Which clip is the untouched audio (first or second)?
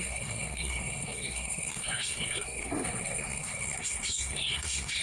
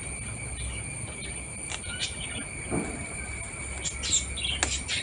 second